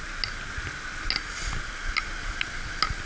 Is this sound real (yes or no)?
yes